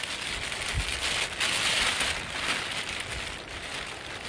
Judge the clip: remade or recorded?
recorded